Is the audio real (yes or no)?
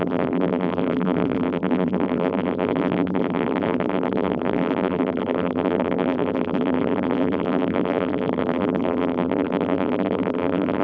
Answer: no